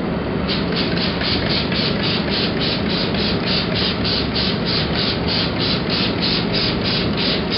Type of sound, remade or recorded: recorded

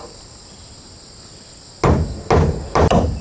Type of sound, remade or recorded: recorded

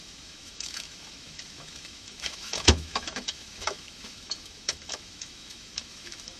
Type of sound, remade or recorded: remade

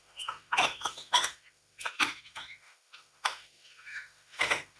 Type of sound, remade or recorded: remade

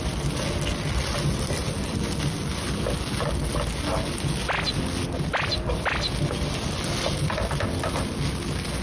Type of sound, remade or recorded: recorded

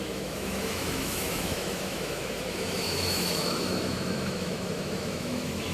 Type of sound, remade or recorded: remade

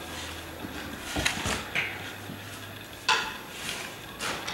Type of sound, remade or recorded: recorded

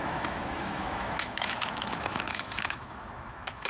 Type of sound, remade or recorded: remade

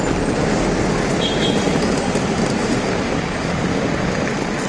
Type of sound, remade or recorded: recorded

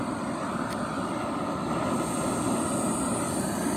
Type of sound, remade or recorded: recorded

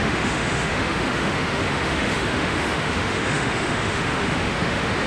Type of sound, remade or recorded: remade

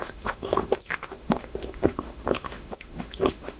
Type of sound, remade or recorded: remade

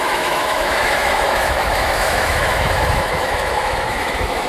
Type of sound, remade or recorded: remade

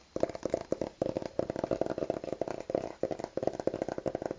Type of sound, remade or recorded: recorded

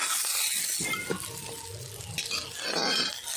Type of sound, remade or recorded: recorded